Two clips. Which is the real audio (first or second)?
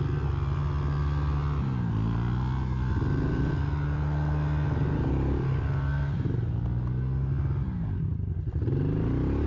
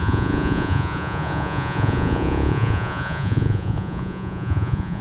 first